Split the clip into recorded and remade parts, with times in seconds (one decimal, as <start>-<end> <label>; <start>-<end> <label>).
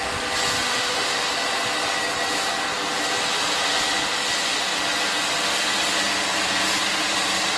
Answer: 0.0-0.6 recorded; 0.6-1.3 remade; 1.3-7.6 recorded